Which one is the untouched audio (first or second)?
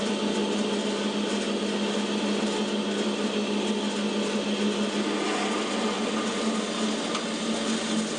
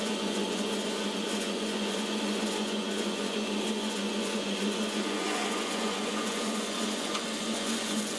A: first